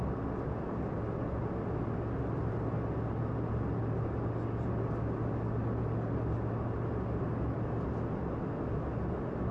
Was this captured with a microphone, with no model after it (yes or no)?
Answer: yes